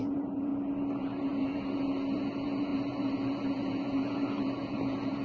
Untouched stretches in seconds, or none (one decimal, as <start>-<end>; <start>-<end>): 0.5-1.0